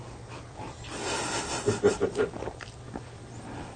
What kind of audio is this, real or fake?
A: real